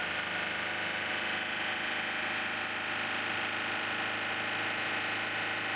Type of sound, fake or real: real